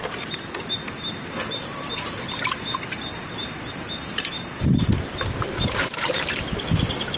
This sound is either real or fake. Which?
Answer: real